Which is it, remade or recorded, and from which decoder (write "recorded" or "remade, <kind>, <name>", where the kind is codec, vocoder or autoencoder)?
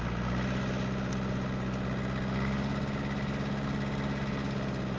recorded